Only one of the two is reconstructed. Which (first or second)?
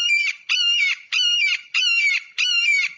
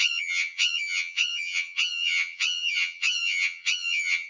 second